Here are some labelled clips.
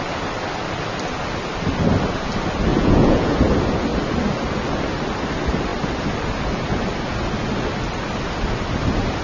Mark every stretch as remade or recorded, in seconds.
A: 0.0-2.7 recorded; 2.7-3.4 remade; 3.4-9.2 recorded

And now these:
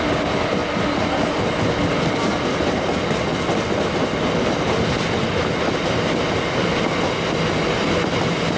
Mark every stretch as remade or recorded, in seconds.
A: 0.0-8.6 recorded

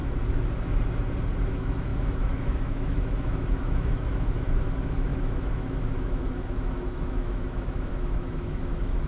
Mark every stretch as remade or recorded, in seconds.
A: 0.0-1.5 recorded; 1.5-9.1 remade

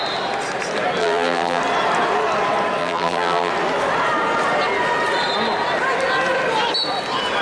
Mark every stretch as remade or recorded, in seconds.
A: 0.0-1.0 recorded; 1.0-1.6 remade; 1.6-2.8 recorded; 2.8-3.5 remade; 3.5-7.4 recorded

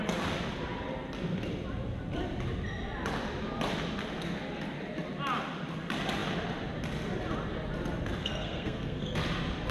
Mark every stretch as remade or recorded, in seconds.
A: 0.0-8.2 recorded; 8.2-9.2 remade; 9.2-9.7 recorded

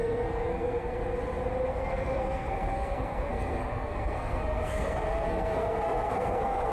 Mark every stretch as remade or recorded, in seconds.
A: 0.0-1.0 remade; 1.0-1.7 recorded; 1.7-6.7 remade

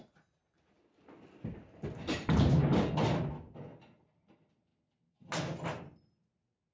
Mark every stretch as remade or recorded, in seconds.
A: 0.0-6.7 recorded